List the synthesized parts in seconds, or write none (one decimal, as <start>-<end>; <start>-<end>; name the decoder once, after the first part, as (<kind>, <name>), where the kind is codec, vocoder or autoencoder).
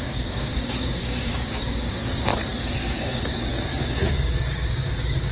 0.0-2.3 (codec, DAC); 2.9-5.3